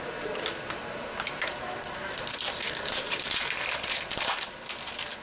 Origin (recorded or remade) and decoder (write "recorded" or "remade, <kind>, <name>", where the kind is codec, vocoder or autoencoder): recorded